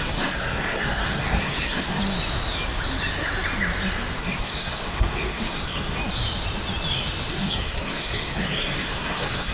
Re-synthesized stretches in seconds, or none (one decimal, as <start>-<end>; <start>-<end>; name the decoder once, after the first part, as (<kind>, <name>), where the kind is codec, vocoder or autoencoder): 0.0-2.0 (codec, SNAC); 4.2-6.0; 7.3-9.5